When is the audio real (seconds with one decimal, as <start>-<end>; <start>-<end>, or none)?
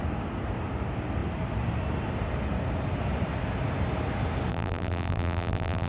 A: 0.0-4.5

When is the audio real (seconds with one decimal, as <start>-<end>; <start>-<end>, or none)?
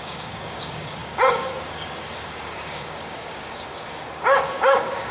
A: none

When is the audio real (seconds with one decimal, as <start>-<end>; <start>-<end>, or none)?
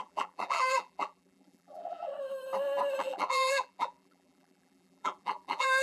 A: 2.1-3.0